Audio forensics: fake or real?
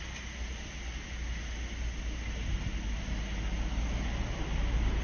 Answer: real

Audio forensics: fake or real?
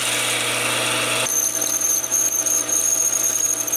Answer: real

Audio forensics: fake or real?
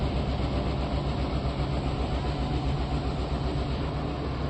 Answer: real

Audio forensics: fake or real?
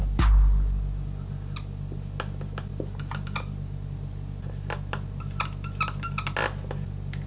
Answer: real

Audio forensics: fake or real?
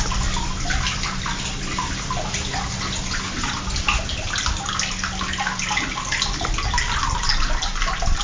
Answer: real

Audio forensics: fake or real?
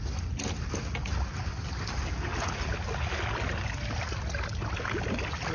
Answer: real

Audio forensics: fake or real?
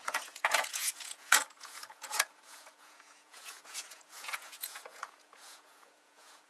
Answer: fake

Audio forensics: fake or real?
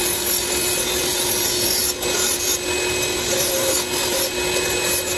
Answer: real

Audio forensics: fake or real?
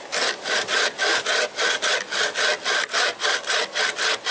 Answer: real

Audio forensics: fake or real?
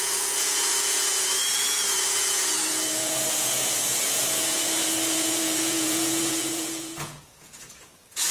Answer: fake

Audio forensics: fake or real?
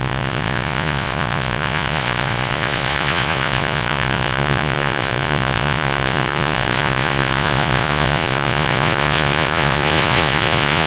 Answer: fake